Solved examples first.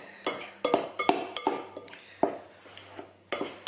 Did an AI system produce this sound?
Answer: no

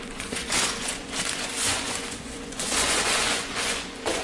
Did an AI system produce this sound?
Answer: yes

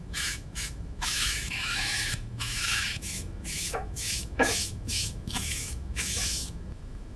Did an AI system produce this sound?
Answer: yes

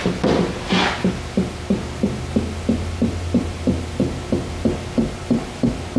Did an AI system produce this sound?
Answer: no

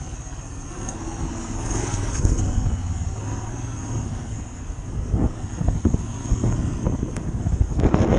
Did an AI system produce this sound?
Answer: yes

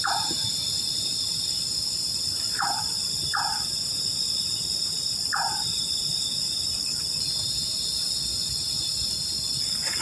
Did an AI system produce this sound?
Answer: no